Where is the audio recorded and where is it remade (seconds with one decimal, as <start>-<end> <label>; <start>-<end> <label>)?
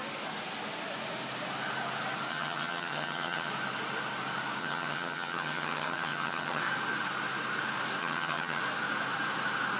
0.0-2.3 recorded; 2.3-3.5 remade; 3.5-4.6 recorded; 4.6-6.6 remade; 6.6-8.0 recorded; 8.0-8.6 remade; 8.6-9.8 recorded